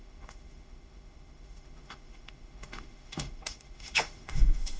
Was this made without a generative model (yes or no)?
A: no